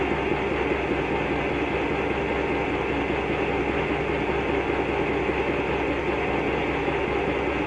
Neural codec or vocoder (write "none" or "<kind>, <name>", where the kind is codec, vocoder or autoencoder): none